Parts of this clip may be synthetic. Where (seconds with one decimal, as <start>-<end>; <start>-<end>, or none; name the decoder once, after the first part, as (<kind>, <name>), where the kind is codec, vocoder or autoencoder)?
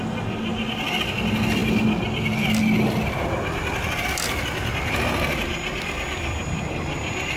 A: none